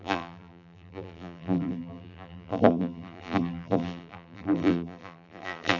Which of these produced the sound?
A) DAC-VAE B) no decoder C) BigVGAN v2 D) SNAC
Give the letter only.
C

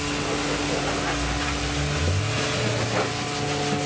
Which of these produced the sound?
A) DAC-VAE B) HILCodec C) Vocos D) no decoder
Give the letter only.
D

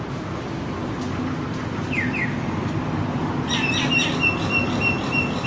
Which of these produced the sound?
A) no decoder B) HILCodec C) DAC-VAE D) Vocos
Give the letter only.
A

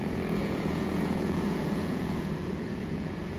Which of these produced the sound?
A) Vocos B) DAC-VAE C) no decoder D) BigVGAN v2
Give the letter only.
A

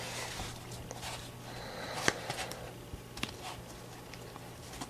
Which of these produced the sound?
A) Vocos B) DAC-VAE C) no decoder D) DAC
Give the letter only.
C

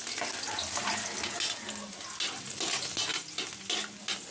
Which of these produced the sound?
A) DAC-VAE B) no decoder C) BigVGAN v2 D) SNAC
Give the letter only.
B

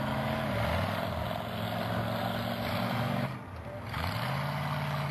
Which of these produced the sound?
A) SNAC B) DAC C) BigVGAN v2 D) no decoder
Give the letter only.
D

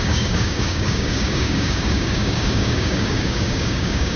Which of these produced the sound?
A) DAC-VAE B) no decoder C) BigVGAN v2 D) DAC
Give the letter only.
D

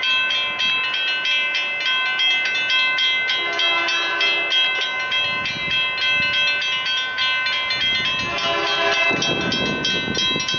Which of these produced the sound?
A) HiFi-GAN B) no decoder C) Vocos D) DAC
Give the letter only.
B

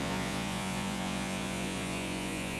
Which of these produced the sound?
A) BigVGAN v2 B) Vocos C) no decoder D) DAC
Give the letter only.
B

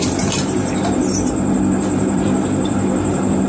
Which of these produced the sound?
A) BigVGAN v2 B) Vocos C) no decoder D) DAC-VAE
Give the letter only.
A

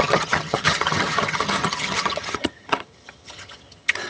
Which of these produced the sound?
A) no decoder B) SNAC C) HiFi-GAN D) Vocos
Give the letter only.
C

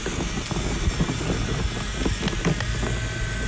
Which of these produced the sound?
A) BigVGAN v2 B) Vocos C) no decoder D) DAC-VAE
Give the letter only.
C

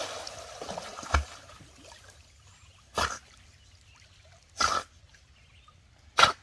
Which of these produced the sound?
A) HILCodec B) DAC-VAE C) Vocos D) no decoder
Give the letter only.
D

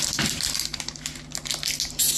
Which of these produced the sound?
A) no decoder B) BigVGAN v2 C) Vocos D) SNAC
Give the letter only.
A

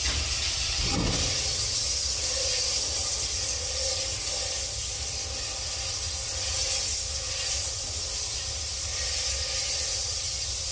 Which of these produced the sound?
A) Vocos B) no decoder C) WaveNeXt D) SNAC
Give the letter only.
B